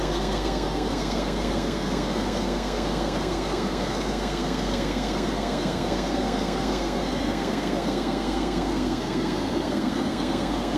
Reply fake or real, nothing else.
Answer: fake